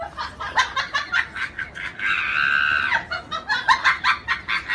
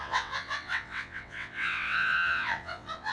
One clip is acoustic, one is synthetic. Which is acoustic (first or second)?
first